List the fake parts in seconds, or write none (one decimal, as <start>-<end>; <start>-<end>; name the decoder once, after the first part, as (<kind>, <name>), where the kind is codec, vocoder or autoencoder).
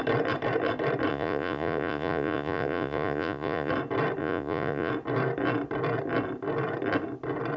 1.1-3.7 (vocoder, Vocos); 4.2-4.9